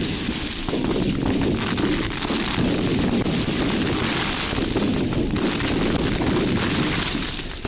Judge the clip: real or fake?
real